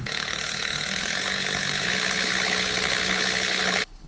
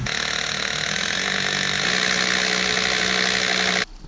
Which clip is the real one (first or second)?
second